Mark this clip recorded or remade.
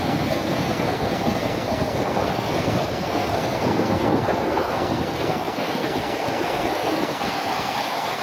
remade